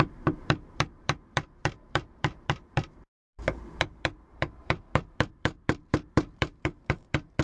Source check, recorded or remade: remade